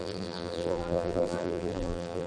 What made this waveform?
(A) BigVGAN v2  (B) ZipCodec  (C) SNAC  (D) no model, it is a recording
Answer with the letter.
A